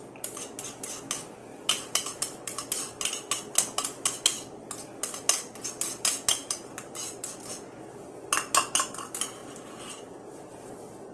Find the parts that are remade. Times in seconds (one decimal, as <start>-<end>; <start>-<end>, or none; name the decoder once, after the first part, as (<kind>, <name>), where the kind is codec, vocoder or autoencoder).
1.4-2.9 (vocoder, BigVGAN v2); 6.4-7.3; 9.4-10.7

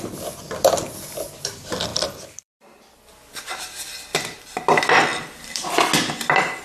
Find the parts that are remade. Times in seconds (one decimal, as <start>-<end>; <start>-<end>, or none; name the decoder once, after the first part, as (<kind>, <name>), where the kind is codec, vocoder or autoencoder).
1.9-3.1 (vocoder, BigVGAN v2); 5.1-5.8